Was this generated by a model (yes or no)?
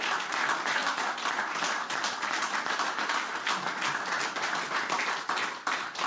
no